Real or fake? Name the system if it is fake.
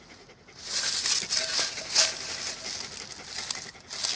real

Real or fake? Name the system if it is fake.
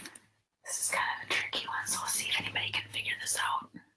real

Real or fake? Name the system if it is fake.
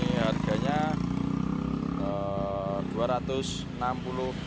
real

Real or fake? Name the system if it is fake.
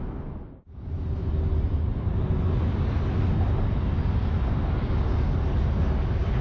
real